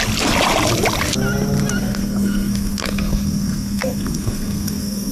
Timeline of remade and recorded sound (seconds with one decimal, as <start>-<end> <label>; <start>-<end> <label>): 0.0-1.8 recorded; 1.8-5.1 remade